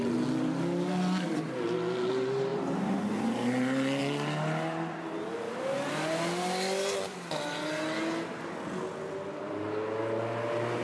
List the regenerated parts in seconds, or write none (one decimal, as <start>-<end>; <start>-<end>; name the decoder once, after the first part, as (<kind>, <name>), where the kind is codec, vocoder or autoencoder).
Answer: 2.5-3.0 (vocoder, BigVGAN v2)